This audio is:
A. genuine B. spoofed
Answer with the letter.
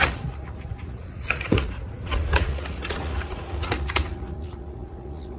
B